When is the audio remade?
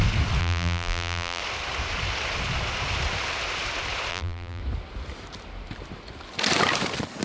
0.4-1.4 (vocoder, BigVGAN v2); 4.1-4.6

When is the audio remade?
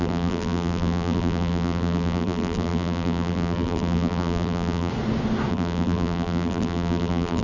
0.0-4.9 (vocoder, BigVGAN v2); 5.5-7.4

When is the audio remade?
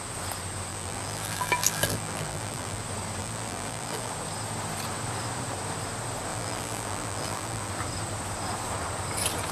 0.7-2.8 (vocoder, BigVGAN v2); 3.2-4.1; 6.3-7.7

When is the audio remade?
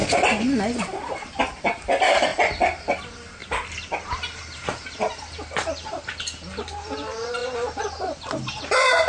0.0-1.4 (vocoder, BigVGAN v2); 2.3-3.0; 3.4-6.2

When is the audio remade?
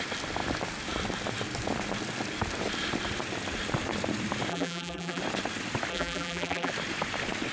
4.5-5.2 (vocoder, BigVGAN v2); 5.9-6.7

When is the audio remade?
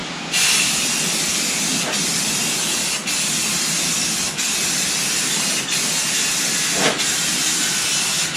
none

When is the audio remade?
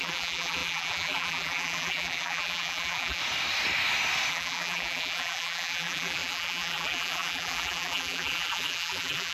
0.0-3.2 (vocoder, BigVGAN v2); 4.3-9.3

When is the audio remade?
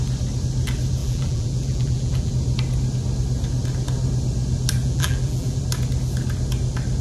1.0-2.3 (vocoder, BigVGAN v2); 4.8-5.6